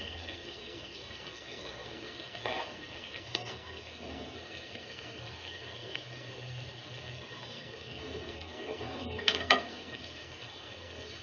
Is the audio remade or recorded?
remade